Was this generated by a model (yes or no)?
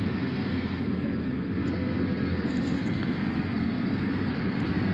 yes